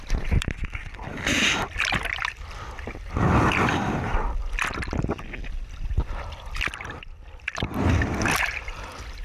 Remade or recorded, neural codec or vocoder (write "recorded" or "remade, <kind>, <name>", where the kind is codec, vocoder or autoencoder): remade, vocoder, BigVGAN v2